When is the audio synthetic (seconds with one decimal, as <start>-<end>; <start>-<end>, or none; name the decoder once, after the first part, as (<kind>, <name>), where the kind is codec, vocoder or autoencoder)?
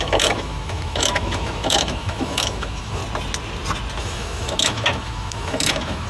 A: 0.0-3.0 (autoencoder, DAC-VAE); 4.0-6.1